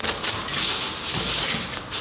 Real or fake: real